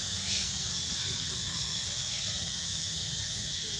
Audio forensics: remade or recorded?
remade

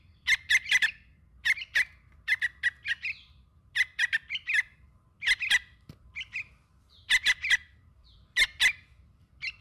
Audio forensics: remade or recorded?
remade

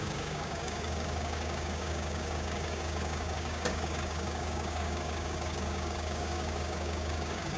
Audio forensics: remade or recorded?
remade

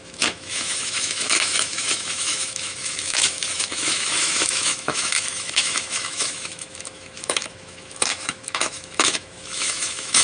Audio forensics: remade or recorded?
remade